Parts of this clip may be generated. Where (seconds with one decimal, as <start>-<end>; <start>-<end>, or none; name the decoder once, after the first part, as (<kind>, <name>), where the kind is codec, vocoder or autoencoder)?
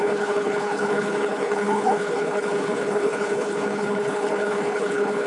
0.0-5.3 (codec, HILCodec)